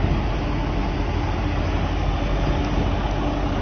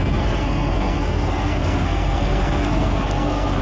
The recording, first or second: first